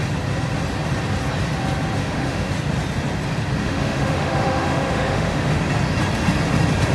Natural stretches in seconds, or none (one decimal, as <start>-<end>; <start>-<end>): 0.0-2.0; 2.5-3.6; 5.6-6.9